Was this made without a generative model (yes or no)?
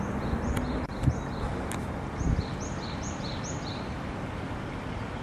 yes